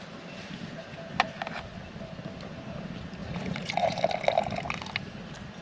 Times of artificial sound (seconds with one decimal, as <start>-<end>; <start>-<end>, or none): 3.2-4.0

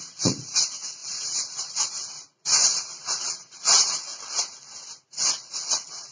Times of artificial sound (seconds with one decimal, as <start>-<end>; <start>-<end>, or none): 0.0-4.1; 5.0-6.1

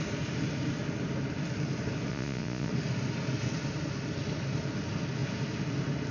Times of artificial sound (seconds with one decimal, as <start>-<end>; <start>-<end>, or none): 2.1-2.7

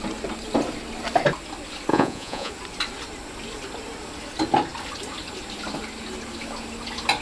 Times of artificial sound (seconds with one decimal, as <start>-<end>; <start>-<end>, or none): 1.9-2.5

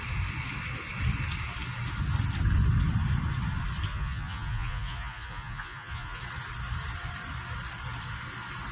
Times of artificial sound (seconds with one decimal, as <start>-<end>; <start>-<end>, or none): 3.9-6.2

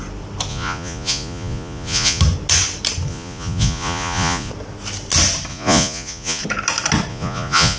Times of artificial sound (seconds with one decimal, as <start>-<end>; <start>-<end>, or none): 0.5-2.2; 3.1-4.5; 5.5-6.4; 7.1-7.8